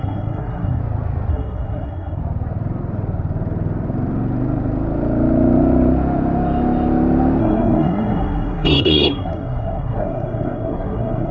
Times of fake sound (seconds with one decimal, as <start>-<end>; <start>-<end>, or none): 0.0-0.8; 1.3-2.2; 7.4-11.3